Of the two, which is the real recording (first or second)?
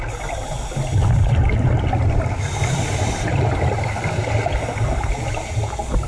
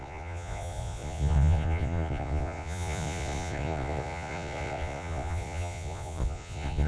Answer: first